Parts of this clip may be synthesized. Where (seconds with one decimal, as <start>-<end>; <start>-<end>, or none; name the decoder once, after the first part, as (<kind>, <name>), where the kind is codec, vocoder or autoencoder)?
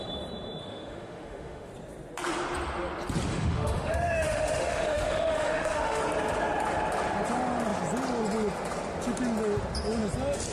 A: 0.6-1.7 (autoencoder, DAC-VAE); 3.3-6.0